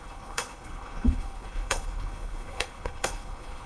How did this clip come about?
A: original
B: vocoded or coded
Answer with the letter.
B